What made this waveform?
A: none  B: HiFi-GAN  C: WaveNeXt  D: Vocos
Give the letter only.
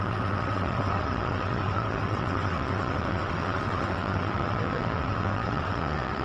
C